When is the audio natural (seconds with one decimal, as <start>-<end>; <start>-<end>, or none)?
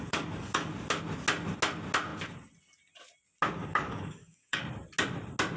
0.7-3.6; 4.6-5.6